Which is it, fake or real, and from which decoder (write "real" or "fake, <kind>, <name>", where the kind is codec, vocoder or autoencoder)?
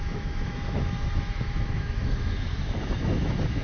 fake, autoencoder, DAC-VAE